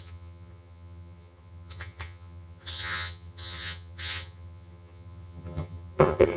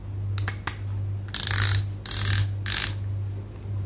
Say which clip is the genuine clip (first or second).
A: second